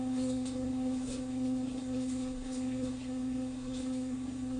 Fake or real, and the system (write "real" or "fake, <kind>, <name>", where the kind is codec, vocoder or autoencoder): fake, codec, SNAC